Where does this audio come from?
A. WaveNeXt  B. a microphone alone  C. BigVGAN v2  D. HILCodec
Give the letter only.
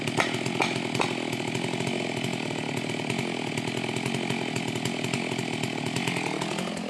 B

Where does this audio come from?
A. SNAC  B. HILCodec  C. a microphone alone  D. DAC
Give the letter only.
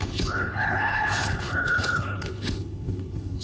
B